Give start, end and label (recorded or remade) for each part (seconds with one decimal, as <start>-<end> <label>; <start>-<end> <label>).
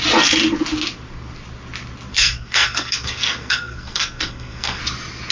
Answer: 0.0-2.1 recorded; 2.1-4.8 remade; 4.8-5.3 recorded